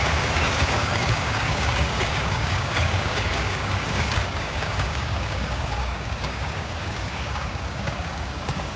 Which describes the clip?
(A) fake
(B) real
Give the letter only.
A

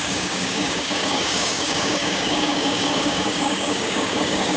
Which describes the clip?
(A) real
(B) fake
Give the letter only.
B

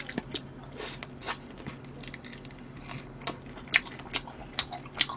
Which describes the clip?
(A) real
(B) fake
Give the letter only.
A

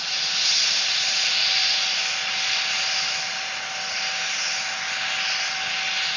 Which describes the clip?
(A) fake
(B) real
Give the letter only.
B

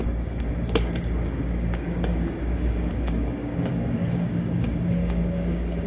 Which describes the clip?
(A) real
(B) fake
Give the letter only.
B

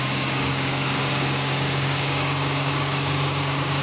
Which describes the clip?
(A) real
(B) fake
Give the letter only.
B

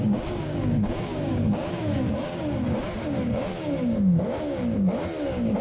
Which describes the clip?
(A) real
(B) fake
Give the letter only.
B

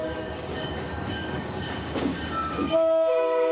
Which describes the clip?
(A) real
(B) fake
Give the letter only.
B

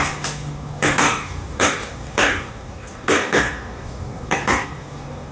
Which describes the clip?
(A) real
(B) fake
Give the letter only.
B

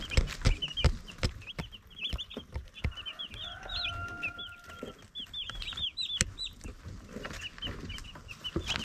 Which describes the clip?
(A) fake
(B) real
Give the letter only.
B